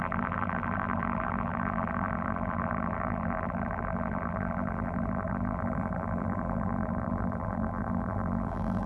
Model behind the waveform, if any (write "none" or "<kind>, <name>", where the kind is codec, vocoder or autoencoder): vocoder, BigVGAN v2